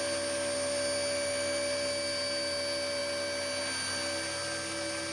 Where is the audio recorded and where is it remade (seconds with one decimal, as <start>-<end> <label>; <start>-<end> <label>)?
0.0-5.1 recorded